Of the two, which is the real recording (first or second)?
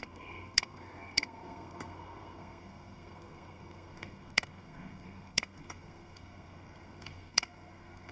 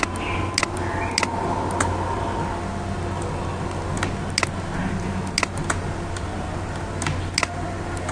second